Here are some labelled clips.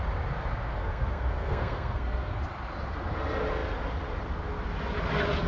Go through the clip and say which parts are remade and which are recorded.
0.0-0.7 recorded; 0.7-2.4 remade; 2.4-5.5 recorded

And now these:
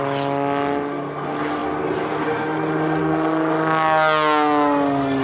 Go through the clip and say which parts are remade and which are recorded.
0.0-5.2 recorded

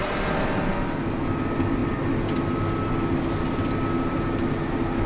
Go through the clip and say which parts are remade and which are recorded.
0.0-5.1 recorded

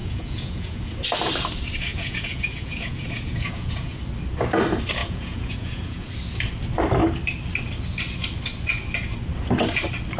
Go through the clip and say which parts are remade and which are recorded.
0.0-1.0 remade; 1.0-1.9 recorded; 1.9-4.0 remade; 4.0-5.0 recorded; 5.0-6.1 remade; 6.1-10.2 recorded

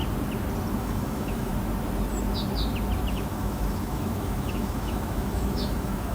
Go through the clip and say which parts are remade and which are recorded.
0.0-0.8 recorded; 0.8-1.5 remade; 1.5-3.1 recorded; 3.1-6.1 remade

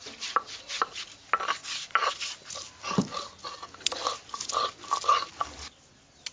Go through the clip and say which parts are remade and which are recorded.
0.0-6.3 recorded

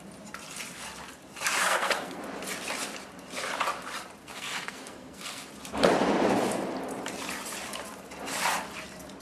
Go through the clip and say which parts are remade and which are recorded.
0.0-1.6 recorded; 1.6-2.2 remade; 2.2-4.2 recorded; 4.2-5.5 remade; 5.5-9.2 recorded